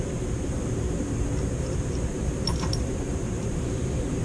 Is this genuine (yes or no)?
no